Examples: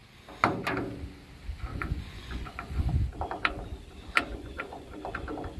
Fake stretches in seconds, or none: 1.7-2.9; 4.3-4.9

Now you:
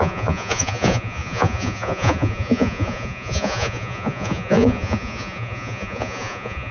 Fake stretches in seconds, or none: 0.0-6.7

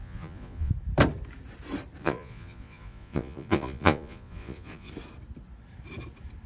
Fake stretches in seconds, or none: 0.0-0.7; 2.0-4.9

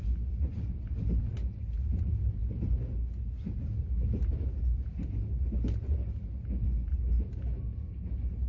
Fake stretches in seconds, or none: none